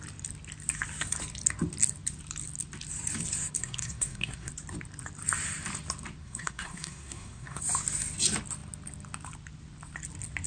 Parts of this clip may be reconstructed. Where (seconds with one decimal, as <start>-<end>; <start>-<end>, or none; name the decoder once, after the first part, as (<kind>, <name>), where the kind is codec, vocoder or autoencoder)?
3.6-4.5 (codec, SNAC); 6.2-7.6